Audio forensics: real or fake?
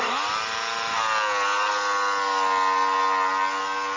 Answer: real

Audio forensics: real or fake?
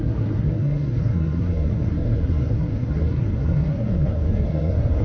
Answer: fake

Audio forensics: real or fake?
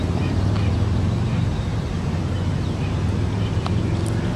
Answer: real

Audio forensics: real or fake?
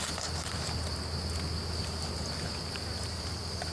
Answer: real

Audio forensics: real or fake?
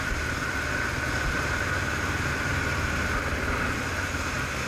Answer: real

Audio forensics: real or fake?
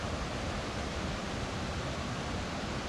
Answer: real